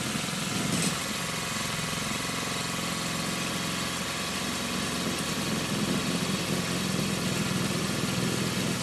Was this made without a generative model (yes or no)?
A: yes